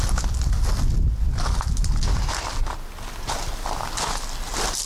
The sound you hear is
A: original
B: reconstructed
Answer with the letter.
A